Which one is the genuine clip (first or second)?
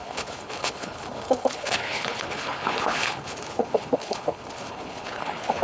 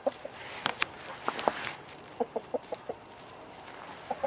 second